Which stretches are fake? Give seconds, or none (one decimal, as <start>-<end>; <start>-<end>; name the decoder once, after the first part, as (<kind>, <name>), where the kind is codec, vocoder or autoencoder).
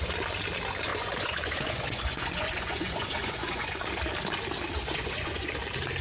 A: 0.9-3.8 (vocoder, Vocos); 4.8-5.5